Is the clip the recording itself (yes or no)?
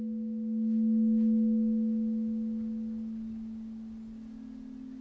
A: yes